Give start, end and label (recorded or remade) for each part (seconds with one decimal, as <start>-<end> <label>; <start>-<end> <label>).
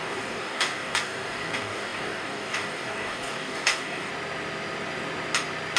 0.0-4.1 remade; 4.1-5.8 recorded